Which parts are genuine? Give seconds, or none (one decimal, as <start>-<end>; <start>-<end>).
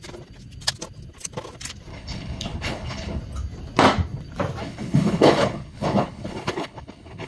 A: 0.0-1.9; 3.2-4.6